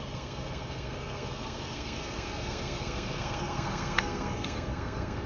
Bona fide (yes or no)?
no